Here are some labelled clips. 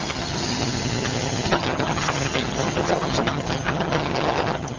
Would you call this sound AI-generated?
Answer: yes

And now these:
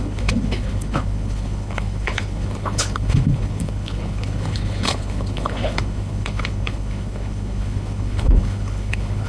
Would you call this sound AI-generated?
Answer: yes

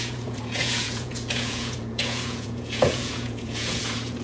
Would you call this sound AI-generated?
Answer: yes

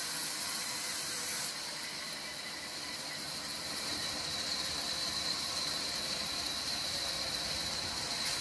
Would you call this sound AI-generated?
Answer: yes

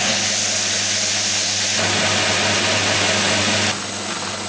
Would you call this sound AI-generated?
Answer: no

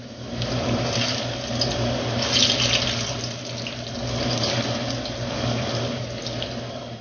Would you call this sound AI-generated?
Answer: no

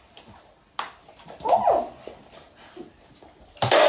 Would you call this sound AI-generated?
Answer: no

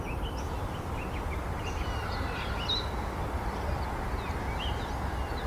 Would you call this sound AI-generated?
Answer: no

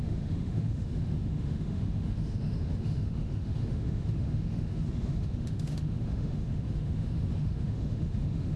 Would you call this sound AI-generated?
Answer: yes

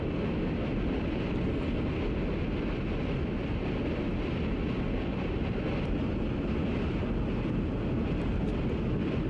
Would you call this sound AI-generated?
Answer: no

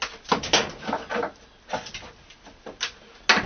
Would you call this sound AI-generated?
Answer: no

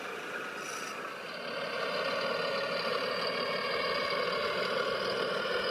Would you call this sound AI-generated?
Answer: no